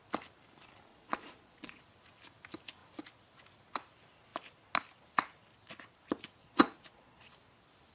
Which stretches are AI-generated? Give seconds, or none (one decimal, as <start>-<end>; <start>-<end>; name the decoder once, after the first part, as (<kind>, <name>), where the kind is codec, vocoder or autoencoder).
0.9-1.8 (vocoder, Vocos); 6.4-7.4